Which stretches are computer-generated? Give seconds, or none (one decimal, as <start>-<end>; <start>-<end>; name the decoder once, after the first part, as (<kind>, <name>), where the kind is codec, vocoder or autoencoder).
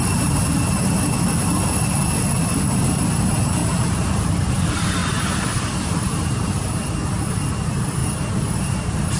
0.0-5.0 (vocoder, BigVGAN v2); 5.6-8.0; 8.6-9.2